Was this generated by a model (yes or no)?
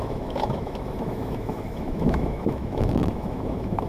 yes